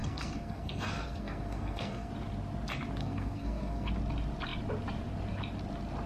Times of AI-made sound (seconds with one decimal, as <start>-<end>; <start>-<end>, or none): 0.0-2.1; 3.0-3.9